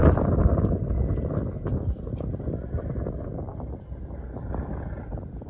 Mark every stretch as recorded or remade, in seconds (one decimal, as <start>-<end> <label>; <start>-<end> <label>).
0.0-0.7 remade; 0.7-1.7 recorded; 1.7-2.6 remade; 2.6-3.5 recorded; 3.5-4.8 remade; 4.8-5.5 recorded